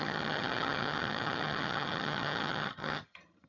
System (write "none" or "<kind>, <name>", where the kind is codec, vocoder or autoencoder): vocoder, HiFi-GAN